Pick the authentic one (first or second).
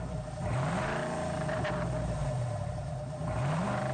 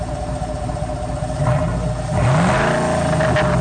second